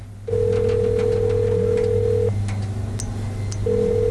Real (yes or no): yes